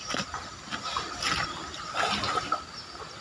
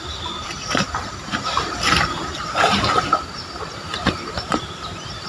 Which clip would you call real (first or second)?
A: first